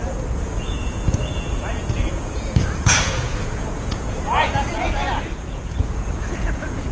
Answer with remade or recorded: remade